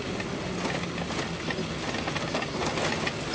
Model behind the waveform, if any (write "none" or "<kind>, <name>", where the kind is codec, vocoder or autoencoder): none